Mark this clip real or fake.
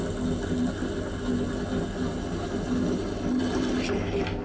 real